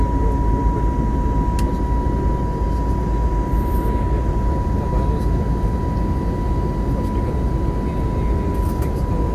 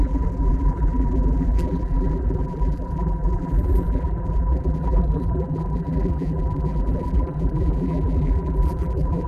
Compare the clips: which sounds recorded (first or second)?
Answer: first